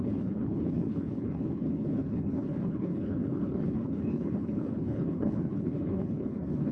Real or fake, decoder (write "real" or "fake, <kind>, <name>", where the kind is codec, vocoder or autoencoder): fake, codec, HILCodec